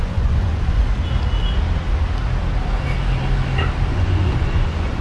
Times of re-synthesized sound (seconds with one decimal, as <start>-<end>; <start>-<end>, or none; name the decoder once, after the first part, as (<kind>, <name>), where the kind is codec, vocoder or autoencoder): 0.0-0.9 (vocoder, Vocos); 3.9-5.0